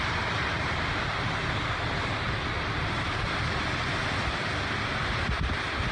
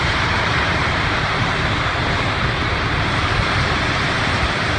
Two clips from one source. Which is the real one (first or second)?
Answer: first